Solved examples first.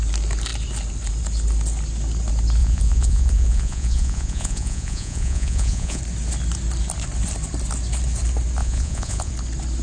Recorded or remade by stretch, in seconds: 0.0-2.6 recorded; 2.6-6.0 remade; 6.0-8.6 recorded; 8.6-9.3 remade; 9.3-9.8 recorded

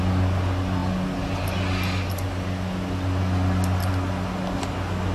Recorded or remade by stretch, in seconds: 0.0-5.1 recorded

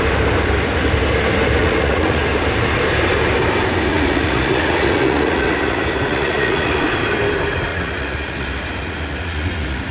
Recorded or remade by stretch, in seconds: 0.0-1.6 recorded; 1.6-2.2 remade; 2.2-3.9 recorded; 3.9-6.8 remade; 6.8-7.7 recorded; 7.7-9.9 remade

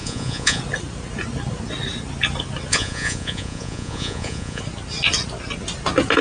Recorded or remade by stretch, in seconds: 0.0-0.6 remade; 0.6-2.7 recorded; 2.7-4.6 remade; 4.6-6.2 recorded

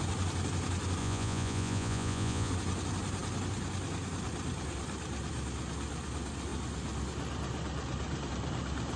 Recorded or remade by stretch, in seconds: 0.0-1.0 recorded; 1.0-2.5 remade; 2.5-9.0 recorded

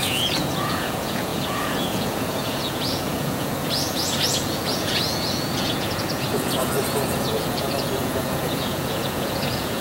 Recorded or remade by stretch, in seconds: 0.0-9.8 remade

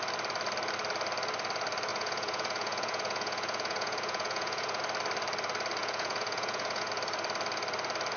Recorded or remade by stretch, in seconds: 0.0-1.9 recorded; 1.9-4.8 remade; 4.8-5.8 recorded; 5.8-6.9 remade; 6.9-8.2 recorded